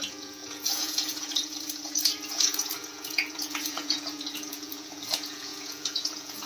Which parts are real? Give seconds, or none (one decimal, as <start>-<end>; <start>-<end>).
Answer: none